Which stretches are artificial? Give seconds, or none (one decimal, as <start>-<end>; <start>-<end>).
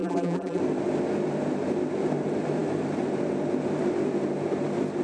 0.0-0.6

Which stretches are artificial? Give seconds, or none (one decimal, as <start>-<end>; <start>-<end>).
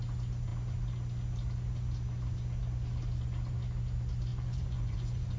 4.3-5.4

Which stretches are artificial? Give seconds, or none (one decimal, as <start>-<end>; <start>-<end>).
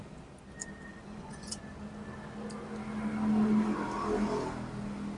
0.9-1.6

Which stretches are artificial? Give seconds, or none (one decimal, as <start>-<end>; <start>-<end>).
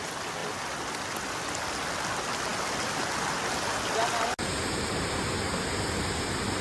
none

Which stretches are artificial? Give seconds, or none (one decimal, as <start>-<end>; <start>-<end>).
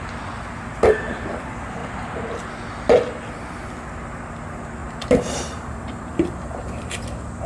1.8-2.5; 4.8-6.9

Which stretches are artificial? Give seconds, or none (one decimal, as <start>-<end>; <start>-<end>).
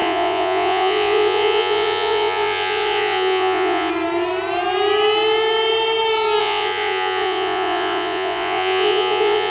0.0-3.9; 6.4-9.5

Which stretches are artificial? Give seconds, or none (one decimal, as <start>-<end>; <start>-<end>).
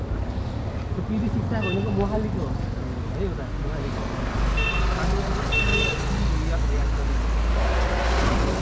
none